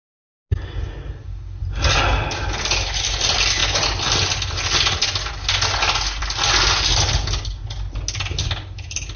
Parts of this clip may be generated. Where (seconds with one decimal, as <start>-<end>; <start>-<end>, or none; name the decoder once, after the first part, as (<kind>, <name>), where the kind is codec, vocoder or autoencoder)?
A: none